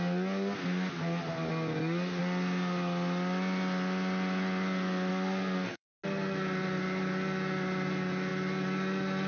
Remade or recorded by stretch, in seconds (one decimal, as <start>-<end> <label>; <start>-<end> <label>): 0.0-5.1 recorded; 5.1-5.9 remade; 5.9-9.3 recorded